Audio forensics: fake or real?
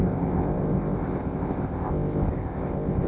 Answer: fake